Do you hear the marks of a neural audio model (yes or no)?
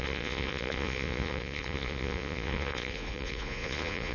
yes